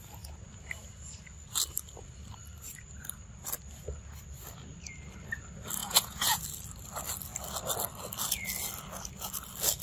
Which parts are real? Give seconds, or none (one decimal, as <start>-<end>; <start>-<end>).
0.0-5.8; 6.4-9.8

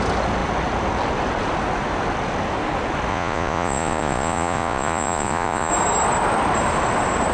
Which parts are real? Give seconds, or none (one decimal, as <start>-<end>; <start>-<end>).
0.0-3.1; 5.7-7.3

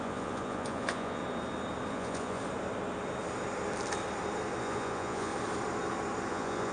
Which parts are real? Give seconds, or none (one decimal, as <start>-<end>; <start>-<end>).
1.2-1.9; 2.4-4.6; 5.3-6.3

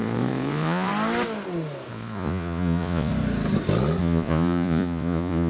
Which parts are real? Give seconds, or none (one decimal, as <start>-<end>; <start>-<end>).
0.9-1.9; 3.1-4.0

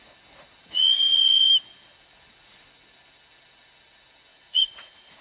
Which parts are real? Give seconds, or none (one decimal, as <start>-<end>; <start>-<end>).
0.0-0.6; 1.5-4.3

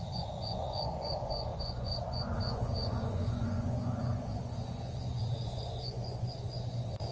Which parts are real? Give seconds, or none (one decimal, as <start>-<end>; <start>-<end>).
none

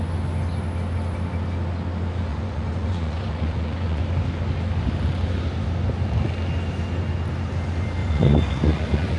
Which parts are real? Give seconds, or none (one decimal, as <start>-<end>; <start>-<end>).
0.0-2.3; 4.0-8.0